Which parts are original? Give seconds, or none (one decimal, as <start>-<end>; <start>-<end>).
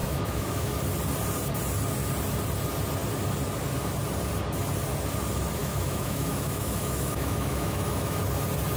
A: 0.7-5.6; 8.2-8.8